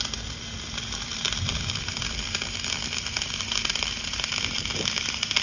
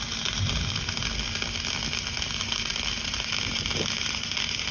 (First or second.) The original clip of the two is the second